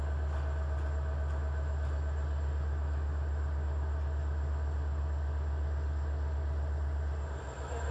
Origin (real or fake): real